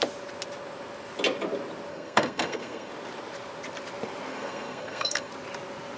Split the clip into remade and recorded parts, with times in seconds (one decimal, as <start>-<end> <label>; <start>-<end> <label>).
0.0-1.9 recorded; 1.9-2.9 remade; 2.9-4.3 recorded; 4.3-5.3 remade; 5.3-6.0 recorded